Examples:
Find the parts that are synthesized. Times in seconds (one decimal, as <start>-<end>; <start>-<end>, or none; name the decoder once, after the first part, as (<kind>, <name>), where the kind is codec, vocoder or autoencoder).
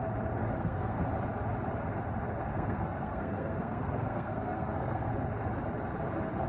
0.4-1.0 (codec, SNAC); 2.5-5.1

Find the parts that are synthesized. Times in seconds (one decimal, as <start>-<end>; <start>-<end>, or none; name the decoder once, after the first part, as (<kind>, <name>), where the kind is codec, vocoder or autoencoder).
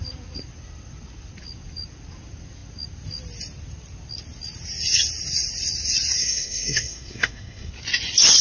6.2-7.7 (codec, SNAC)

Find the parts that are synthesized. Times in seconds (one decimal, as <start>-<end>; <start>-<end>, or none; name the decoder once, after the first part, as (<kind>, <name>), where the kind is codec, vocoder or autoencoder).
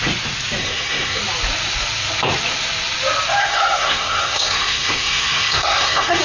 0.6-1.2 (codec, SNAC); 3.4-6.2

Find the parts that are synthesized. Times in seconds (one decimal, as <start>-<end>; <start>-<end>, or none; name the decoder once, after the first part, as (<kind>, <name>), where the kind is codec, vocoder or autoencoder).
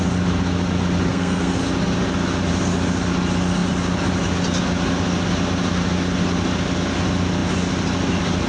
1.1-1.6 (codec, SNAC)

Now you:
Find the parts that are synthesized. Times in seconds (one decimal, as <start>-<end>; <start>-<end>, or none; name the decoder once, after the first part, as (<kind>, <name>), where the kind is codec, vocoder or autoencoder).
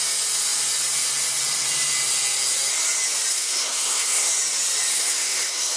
3.3-4.3 (codec, SNAC); 4.9-5.8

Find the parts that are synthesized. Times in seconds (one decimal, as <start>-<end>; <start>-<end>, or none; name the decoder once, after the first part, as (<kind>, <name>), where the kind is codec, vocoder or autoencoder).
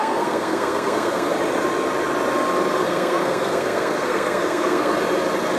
0.0-1.3 (codec, SNAC); 2.7-4.9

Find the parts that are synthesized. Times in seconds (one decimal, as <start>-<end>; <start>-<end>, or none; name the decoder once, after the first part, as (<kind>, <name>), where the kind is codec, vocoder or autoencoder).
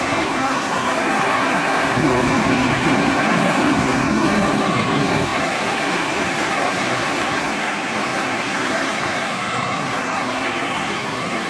0.0-11.5 (codec, SNAC)